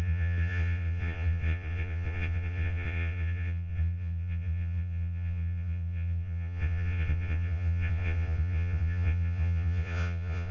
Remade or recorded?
remade